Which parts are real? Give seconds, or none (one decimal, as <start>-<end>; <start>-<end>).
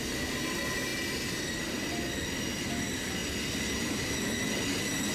0.0-5.1